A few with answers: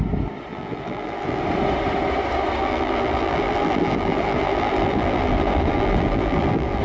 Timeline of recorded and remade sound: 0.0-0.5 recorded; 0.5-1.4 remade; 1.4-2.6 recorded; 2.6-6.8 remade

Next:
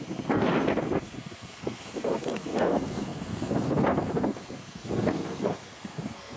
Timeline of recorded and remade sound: 0.0-6.4 remade

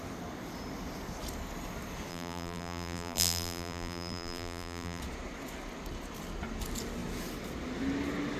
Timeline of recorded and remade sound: 0.0-2.1 recorded; 2.1-5.0 remade; 5.0-8.4 recorded

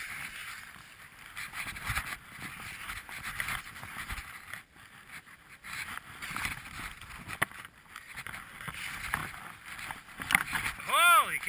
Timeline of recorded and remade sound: 0.0-0.4 recorded; 0.4-4.6 remade; 4.6-11.5 recorded

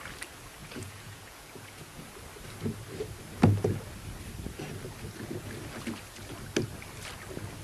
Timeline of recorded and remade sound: 0.0-0.6 recorded; 0.6-2.0 remade; 2.0-7.6 recorded

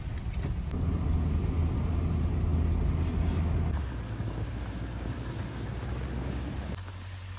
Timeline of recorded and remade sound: 0.0-7.4 recorded

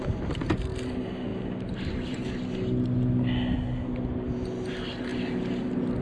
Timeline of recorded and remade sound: 0.0-6.0 recorded